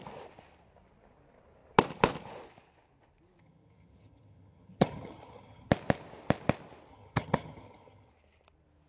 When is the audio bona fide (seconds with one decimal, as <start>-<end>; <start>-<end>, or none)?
0.0-3.4; 5.7-6.9; 8.1-8.9